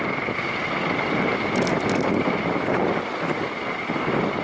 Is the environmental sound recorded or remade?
recorded